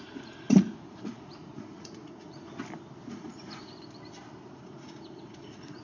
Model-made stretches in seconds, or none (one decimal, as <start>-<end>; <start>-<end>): 0.0-2.6; 3.1-3.7; 4.5-5.8